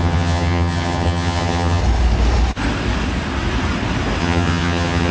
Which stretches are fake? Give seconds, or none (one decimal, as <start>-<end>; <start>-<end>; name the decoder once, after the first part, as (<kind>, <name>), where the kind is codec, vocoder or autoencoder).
0.0-1.8 (vocoder, HiFi-GAN); 4.2-5.1